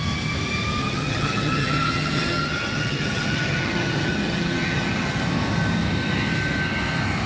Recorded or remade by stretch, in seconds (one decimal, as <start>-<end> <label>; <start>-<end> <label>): 0.0-0.8 recorded; 0.8-5.2 remade; 5.2-7.3 recorded